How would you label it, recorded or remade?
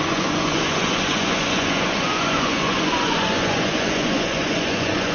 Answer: remade